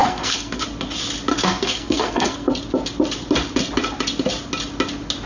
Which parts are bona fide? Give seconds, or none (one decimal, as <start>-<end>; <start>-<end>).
0.6-1.3; 2.5-5.3